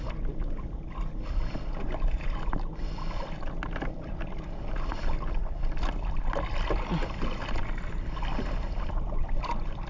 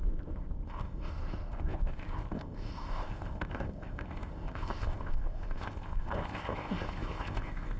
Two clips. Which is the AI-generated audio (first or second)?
second